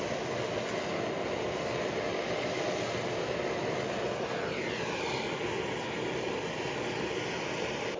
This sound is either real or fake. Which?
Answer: real